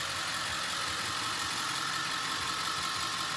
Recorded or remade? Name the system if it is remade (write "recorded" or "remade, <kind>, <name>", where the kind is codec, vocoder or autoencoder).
recorded